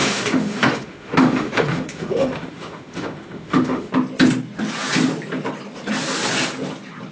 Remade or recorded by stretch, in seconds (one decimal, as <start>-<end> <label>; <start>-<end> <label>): 0.0-3.9 remade; 3.9-7.1 recorded